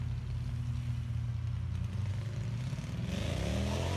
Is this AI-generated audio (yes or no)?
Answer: no